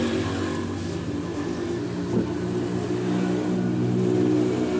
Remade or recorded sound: recorded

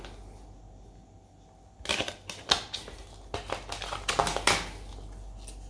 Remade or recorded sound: recorded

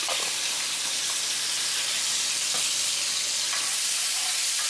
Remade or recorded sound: recorded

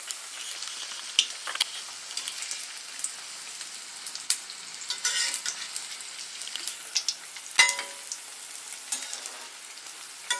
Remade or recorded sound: recorded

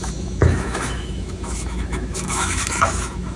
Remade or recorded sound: remade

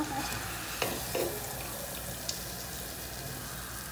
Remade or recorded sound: recorded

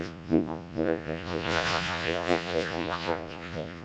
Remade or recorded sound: remade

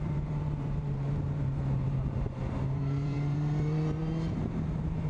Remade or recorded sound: remade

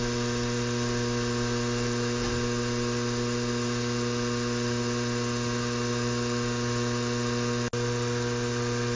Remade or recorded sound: recorded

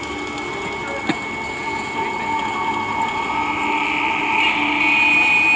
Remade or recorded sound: recorded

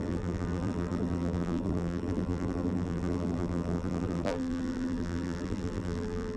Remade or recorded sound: remade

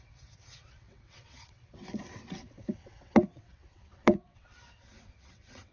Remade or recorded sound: remade